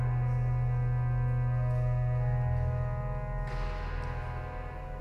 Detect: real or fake real